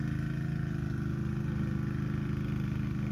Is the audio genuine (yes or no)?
yes